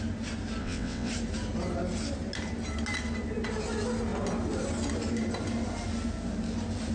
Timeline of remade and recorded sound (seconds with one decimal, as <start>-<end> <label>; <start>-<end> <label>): 0.0-0.6 recorded; 0.6-1.1 remade; 1.1-6.9 recorded

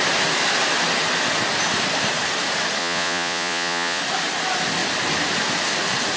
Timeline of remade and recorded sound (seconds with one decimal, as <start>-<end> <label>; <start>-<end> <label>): 0.0-2.8 recorded; 2.8-4.0 remade; 4.0-6.2 recorded

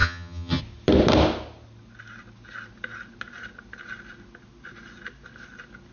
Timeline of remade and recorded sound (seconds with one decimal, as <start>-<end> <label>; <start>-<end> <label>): 0.0-0.6 remade; 0.6-5.9 recorded

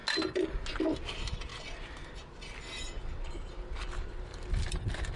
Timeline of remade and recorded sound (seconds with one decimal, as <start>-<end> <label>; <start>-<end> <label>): 0.0-0.8 recorded; 0.8-1.5 remade; 1.5-2.3 recorded; 2.3-5.2 remade